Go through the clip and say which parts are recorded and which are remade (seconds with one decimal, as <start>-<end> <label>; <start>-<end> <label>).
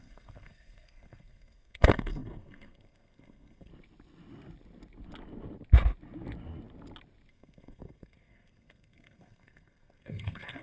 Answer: 0.0-3.7 remade; 3.7-7.3 recorded; 7.3-10.6 remade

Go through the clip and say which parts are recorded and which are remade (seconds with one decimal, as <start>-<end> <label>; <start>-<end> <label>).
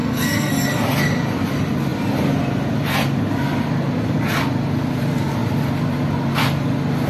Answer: 0.0-0.5 remade; 0.5-7.1 recorded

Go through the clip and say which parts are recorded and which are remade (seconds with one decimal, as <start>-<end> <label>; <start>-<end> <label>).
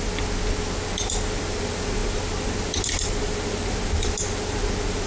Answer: 0.0-5.1 recorded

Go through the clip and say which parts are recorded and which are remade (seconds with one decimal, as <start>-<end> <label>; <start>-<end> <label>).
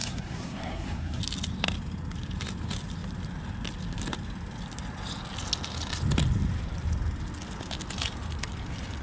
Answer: 0.0-1.2 remade; 1.2-9.0 recorded